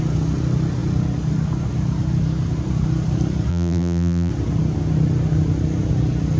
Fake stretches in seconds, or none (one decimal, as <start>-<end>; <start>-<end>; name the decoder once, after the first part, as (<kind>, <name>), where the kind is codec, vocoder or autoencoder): 3.5-4.3 (vocoder, BigVGAN v2)